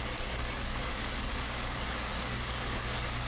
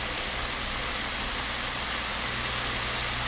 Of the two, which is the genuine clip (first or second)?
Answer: second